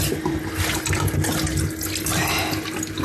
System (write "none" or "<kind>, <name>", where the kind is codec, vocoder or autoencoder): none